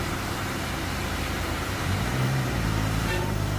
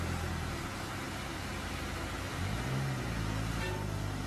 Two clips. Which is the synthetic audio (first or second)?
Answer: first